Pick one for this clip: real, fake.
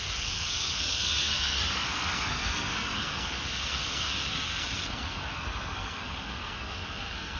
fake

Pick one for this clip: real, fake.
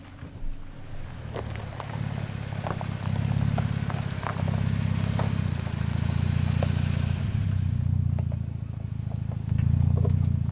real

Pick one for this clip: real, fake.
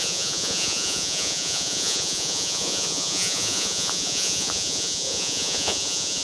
fake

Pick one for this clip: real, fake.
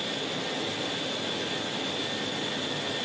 real